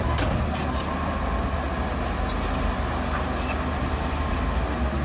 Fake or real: real